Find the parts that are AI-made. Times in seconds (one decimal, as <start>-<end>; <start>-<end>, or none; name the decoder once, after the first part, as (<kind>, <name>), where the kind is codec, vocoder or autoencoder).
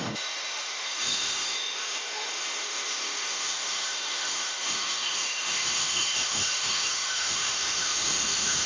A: 0.0-8.7 (autoencoder, DAC-VAE)